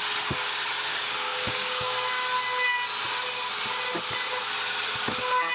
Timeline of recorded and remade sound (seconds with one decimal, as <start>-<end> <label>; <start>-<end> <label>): 0.0-0.9 recorded; 0.9-2.1 remade; 2.1-5.5 recorded